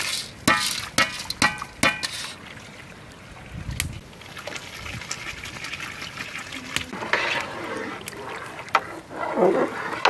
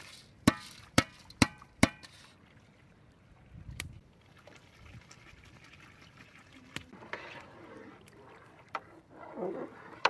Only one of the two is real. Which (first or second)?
first